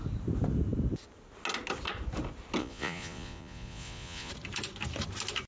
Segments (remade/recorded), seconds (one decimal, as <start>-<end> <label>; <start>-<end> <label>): 0.0-2.6 recorded; 2.6-4.3 remade; 4.3-5.5 recorded